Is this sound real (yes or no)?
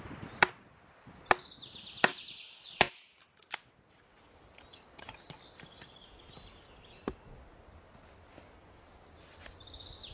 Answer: yes